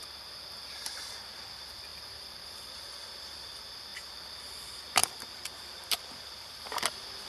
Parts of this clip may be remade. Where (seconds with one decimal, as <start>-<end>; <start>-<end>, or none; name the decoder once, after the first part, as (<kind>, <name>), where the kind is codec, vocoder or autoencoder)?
1.9-2.9 (vocoder, BigVGAN v2); 5.0-6.6